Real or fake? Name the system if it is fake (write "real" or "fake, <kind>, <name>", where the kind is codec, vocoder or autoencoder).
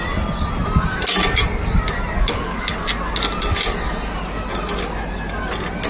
real